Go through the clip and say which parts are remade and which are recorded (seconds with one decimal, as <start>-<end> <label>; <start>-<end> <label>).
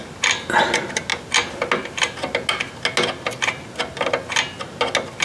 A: 0.0-5.2 recorded